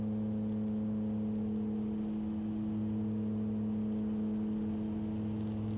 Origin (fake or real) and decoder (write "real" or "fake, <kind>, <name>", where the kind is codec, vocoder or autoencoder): real